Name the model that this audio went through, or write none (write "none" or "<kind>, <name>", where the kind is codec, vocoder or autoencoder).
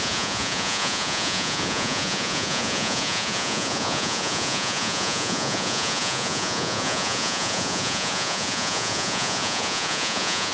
vocoder, Vocos